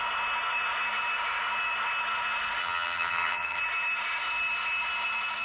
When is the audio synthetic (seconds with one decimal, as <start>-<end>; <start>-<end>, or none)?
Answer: 2.6-3.6